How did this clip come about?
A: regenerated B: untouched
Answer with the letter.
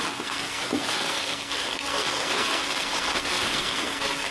A